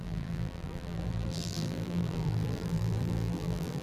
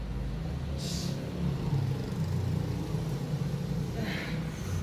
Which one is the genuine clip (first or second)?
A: second